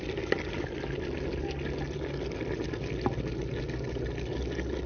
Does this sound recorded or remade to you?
recorded